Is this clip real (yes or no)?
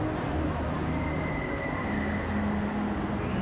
yes